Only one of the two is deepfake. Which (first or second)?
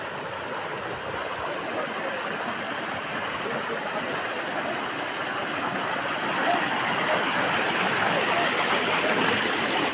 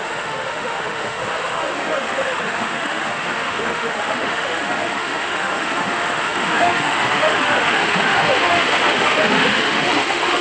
second